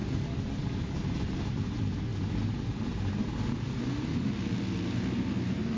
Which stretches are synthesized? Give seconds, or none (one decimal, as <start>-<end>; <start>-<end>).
0.0-1.0